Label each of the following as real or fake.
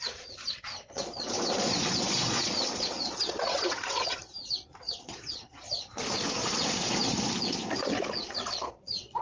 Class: fake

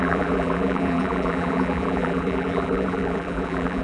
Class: fake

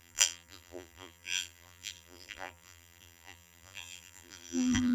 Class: fake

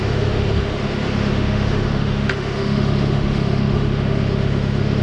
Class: fake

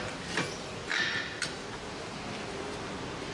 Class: real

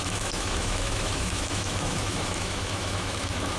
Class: fake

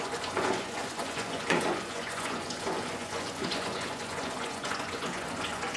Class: fake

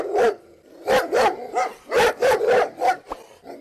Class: real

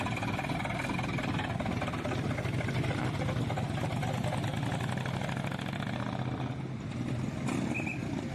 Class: real